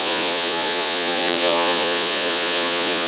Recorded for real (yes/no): no